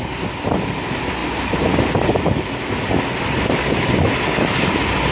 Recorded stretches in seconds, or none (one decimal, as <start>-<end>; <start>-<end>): 0.0-5.1